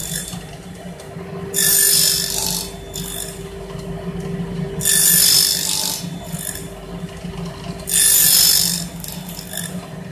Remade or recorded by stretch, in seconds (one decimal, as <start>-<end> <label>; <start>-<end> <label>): 0.0-10.1 recorded